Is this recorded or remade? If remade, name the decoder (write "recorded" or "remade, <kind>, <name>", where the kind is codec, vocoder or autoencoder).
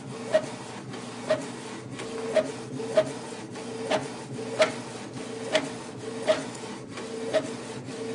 recorded